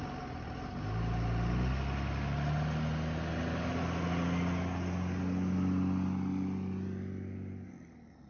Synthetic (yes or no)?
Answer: no